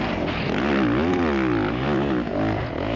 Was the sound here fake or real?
real